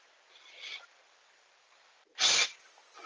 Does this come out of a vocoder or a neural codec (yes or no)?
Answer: no